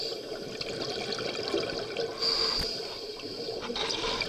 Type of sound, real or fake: real